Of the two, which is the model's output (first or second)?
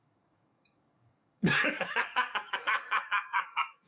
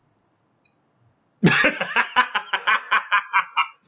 first